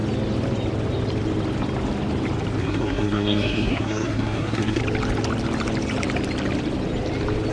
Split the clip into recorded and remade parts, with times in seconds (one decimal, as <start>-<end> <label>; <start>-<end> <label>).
0.0-2.6 recorded; 2.6-4.8 remade; 4.8-7.5 recorded